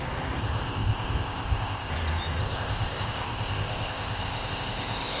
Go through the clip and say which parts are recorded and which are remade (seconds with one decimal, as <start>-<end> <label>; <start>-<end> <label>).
0.0-0.4 recorded; 0.4-1.9 remade; 1.9-2.4 recorded; 2.4-5.2 remade